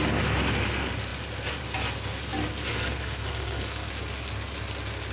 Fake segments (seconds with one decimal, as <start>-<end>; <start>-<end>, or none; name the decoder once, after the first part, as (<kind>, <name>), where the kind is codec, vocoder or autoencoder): 2.7-3.9 (codec, SNAC)